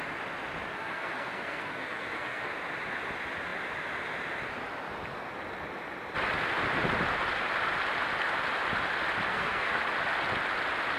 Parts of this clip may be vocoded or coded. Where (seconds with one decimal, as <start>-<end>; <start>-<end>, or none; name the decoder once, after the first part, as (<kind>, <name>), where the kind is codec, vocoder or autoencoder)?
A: 0.7-2.5 (codec, SNAC); 9.3-9.8